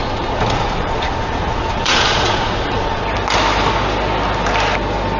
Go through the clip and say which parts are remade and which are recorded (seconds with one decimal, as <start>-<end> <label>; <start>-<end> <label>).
0.0-3.0 remade; 3.0-5.2 recorded